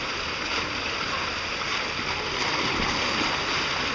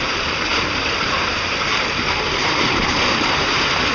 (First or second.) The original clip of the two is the first